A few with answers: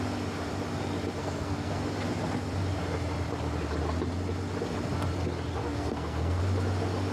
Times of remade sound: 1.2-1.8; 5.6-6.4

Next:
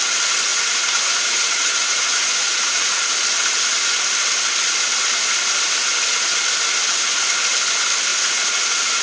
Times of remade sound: 0.5-3.0; 8.1-9.0

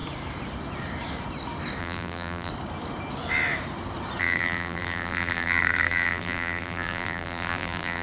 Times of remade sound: 1.8-2.5; 4.2-8.0